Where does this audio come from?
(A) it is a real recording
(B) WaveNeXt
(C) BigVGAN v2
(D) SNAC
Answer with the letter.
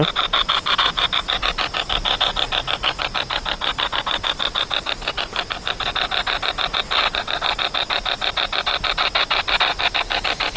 A